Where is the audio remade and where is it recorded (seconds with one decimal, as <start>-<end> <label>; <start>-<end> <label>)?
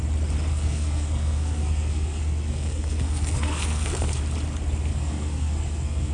0.0-0.5 recorded; 0.5-4.2 remade; 4.2-4.9 recorded; 4.9-6.1 remade